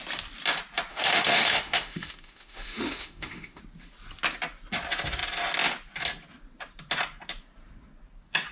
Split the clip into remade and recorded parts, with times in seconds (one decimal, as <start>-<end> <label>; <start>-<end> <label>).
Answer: 0.0-0.9 recorded; 0.9-3.6 remade; 3.6-8.5 recorded